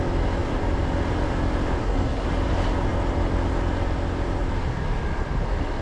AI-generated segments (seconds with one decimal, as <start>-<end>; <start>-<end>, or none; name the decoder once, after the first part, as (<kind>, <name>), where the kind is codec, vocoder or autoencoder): 1.8-2.3 (codec, SNAC)